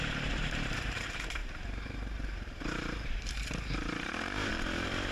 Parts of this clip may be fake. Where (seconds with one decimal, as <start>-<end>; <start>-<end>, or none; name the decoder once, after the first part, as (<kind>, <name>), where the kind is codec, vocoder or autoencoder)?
0.0-5.1 (vocoder, BigVGAN v2)